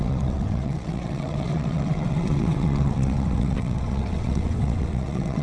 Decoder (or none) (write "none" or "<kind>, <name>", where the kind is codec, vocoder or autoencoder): vocoder, WaveNeXt